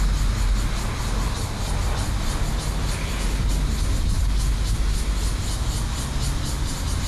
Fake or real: real